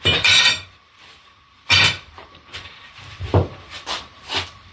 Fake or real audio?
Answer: fake